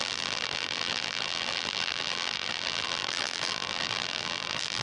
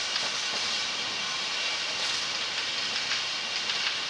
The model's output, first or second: first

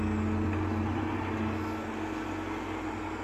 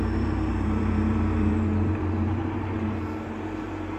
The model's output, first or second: second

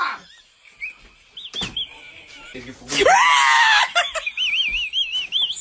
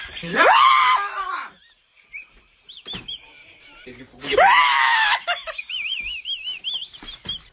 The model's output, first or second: second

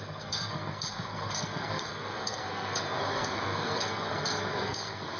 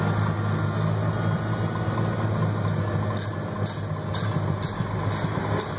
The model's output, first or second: first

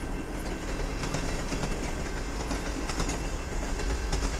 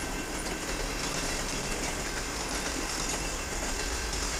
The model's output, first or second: second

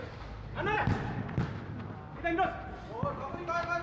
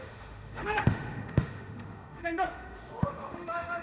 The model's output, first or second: second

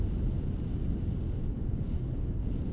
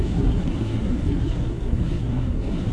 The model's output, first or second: second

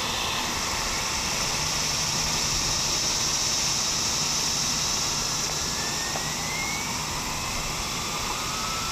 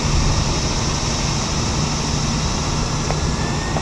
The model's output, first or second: first